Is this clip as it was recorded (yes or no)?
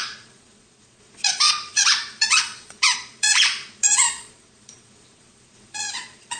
no